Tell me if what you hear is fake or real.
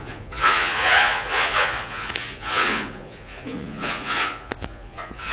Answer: fake